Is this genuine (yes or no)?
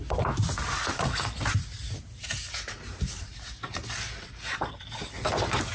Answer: yes